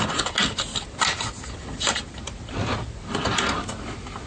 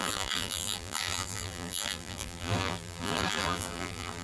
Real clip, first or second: first